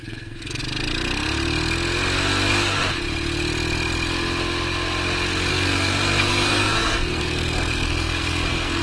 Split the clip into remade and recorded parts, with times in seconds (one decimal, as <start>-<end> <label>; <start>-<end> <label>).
0.0-0.6 remade; 0.6-5.5 recorded; 5.5-8.8 remade